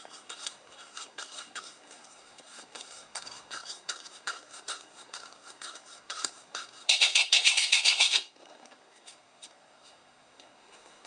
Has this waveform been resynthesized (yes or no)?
yes